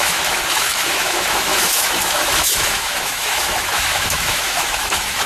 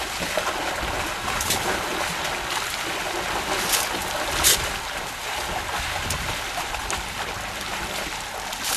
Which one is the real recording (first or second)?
second